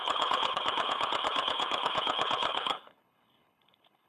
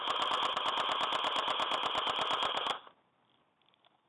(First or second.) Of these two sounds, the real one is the second